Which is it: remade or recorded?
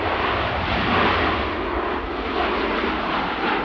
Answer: recorded